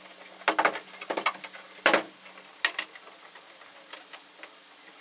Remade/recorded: recorded